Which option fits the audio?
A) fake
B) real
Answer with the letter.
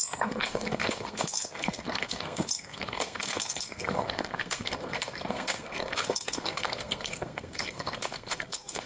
A